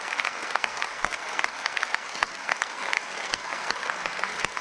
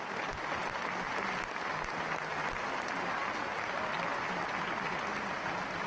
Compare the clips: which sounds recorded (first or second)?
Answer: second